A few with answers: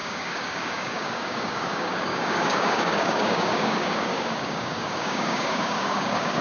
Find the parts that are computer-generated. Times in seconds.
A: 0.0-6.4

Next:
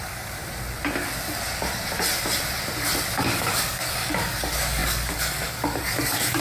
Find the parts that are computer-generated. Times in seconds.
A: 0.0-0.4; 3.1-6.4

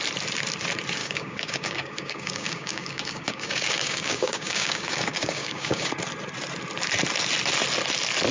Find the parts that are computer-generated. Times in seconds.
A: 1.0-5.9

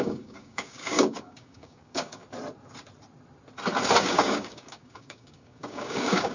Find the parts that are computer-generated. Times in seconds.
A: 0.0-2.2; 4.0-6.3

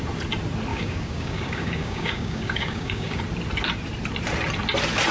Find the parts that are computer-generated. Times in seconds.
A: 0.7-3.2

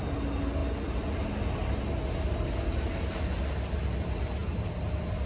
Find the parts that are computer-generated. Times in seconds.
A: none